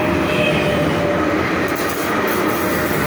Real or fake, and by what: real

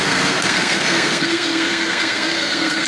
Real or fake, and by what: fake, codec, SNAC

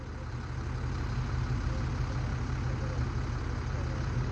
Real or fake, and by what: real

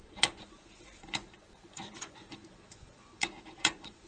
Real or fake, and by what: fake, vocoder, Vocos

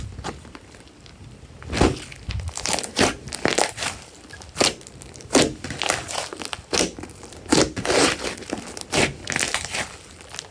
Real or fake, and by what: real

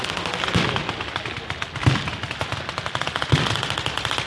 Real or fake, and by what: real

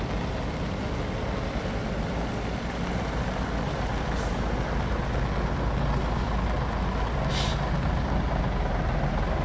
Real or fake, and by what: real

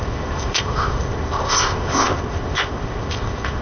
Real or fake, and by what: fake, codec, ZipCodec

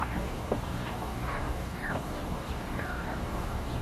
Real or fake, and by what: fake, codec, DAC